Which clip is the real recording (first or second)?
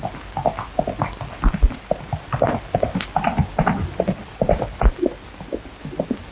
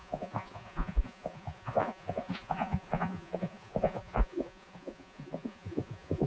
first